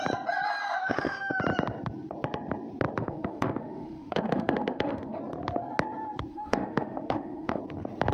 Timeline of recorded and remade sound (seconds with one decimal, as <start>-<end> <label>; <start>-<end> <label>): 0.0-0.8 recorded; 0.8-1.4 remade; 1.4-3.0 recorded; 3.0-5.2 remade; 5.2-6.3 recorded; 6.3-7.6 remade; 7.6-8.1 recorded